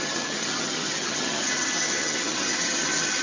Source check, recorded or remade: remade